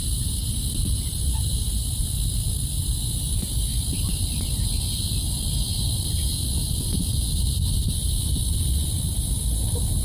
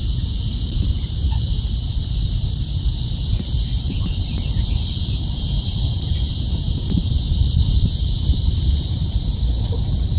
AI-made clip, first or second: second